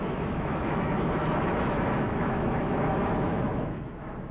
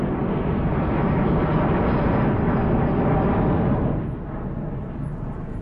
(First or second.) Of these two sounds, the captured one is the second